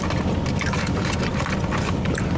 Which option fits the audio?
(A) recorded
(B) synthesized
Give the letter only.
A